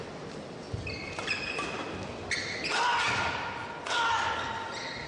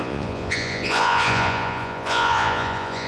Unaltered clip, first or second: first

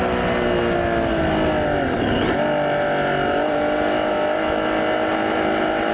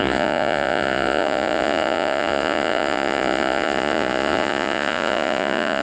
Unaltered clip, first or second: first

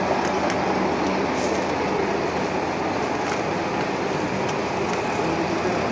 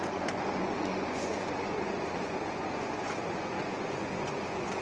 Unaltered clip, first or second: first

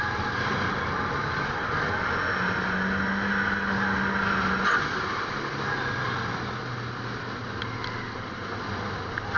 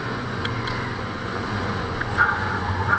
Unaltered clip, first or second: first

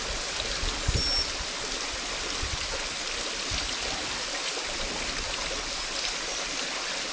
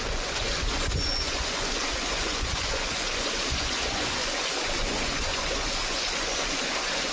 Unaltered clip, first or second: first